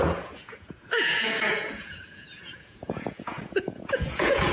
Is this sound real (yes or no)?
no